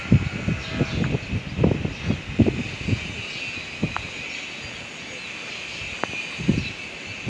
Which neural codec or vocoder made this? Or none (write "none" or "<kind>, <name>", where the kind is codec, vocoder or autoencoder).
none